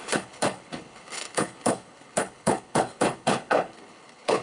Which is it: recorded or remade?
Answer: remade